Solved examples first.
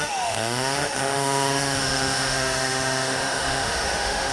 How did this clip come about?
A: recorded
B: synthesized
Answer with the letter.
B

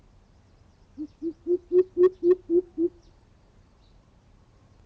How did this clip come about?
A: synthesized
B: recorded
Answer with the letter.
B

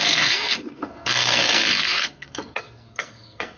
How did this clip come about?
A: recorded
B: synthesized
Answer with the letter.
B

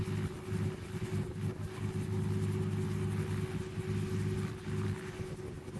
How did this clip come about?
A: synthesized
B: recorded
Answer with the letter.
B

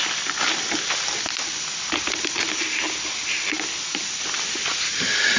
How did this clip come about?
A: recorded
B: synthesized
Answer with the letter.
A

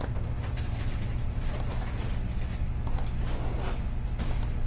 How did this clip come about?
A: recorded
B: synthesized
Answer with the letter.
A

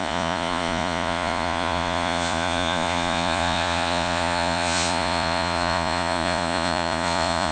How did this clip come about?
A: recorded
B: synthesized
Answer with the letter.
B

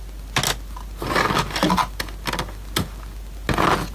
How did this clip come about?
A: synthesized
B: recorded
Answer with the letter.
B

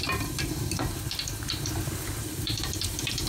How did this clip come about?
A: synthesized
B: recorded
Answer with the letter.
A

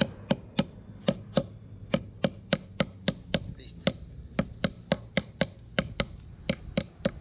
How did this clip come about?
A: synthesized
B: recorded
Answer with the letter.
B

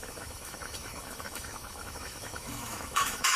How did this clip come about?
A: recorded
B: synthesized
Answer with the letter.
B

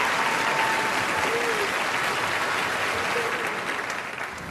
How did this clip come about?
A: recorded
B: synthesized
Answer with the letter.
A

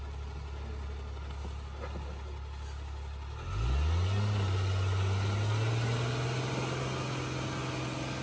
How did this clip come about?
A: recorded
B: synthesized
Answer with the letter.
A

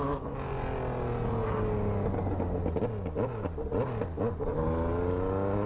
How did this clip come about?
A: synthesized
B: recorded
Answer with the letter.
B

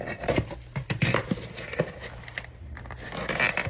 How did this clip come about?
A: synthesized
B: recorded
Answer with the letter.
B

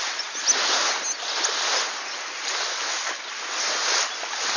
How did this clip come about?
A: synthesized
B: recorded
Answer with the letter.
B